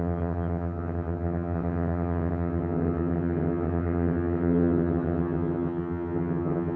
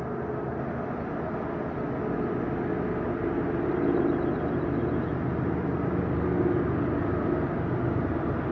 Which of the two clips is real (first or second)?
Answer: second